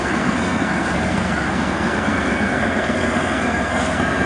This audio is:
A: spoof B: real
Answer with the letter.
A